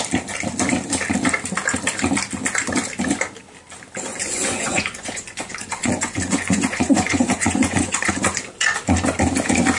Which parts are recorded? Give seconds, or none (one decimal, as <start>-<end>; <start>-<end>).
0.0-4.1; 8.1-9.8